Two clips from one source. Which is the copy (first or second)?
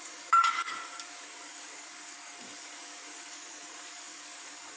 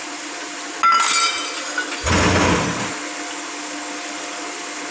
first